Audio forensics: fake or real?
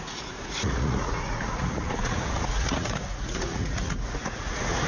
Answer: fake